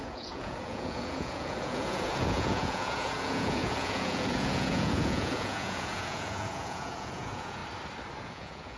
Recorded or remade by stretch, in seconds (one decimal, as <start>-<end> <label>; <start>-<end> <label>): 0.0-7.6 remade; 7.6-8.2 recorded; 8.2-8.8 remade